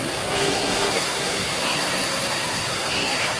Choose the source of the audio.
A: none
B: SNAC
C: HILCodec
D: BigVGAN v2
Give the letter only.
B